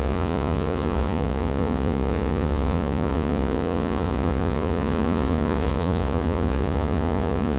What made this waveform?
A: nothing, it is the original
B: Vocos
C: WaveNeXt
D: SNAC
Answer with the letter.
B